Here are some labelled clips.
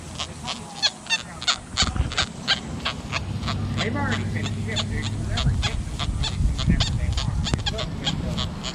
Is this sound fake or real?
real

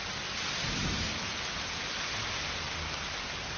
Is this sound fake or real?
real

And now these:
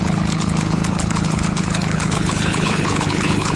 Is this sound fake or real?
fake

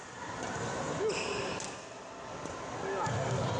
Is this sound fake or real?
real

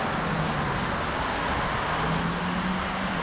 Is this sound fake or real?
real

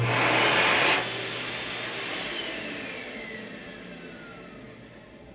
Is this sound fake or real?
real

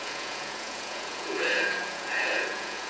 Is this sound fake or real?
fake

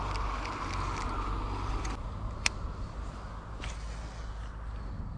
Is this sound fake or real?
real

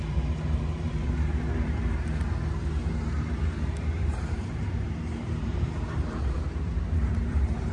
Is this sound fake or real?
fake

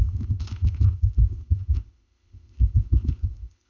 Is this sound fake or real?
fake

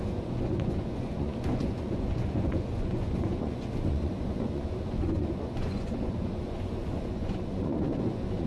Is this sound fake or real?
fake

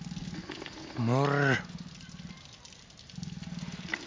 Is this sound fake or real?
real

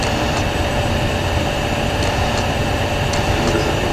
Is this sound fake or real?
fake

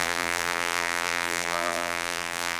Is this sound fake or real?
fake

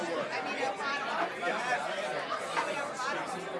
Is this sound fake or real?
real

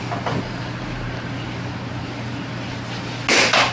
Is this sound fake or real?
real